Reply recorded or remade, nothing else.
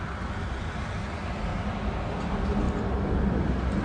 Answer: recorded